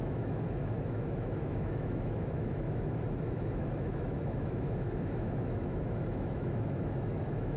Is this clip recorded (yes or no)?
no